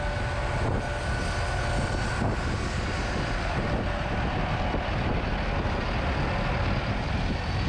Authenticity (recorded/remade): recorded